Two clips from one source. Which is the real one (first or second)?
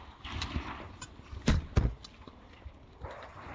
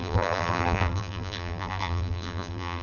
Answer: first